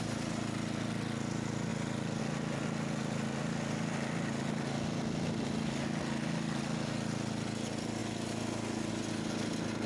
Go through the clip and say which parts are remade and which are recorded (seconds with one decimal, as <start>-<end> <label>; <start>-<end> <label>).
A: 0.0-9.9 recorded